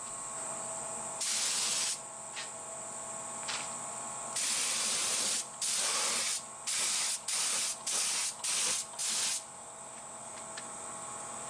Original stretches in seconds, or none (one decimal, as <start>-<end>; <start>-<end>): 0.0-11.5

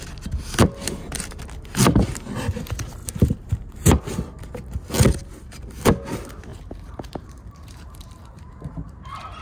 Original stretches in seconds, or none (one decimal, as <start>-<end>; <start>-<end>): 0.0-0.8; 1.4-3.0; 4.0-6.5

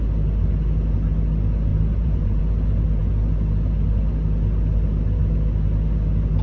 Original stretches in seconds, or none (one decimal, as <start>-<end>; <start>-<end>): 0.0-1.7; 2.4-6.4

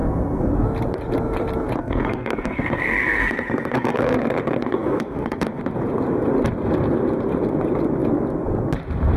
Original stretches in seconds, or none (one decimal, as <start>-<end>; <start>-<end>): 0.5-1.8; 5.6-9.2

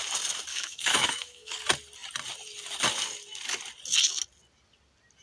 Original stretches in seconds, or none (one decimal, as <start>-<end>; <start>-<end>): 0.0-0.5; 1.5-5.2